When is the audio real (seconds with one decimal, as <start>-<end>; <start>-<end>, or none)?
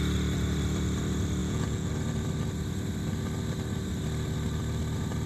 0.0-1.4; 1.9-5.3